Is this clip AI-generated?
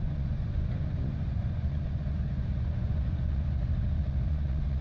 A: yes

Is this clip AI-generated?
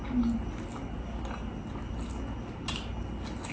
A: no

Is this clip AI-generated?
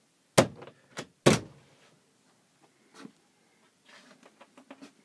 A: no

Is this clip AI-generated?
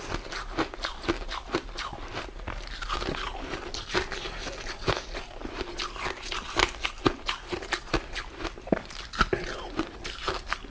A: no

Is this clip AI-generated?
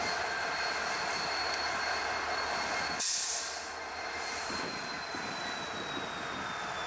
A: no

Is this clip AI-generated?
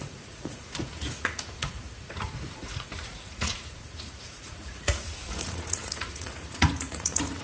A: yes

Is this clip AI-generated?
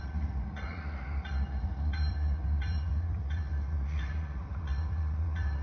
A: yes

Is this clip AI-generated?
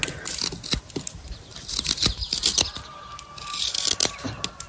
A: no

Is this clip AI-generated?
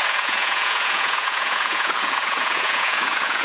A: yes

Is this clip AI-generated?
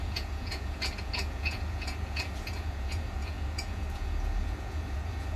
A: yes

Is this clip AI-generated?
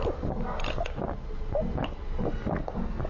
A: no